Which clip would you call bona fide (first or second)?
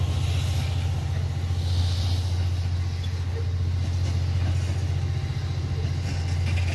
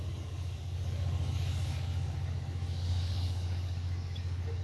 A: first